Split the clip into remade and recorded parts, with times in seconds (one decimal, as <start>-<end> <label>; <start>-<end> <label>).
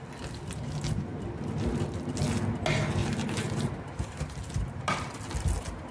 0.0-3.0 recorded; 3.0-4.4 remade; 4.4-5.9 recorded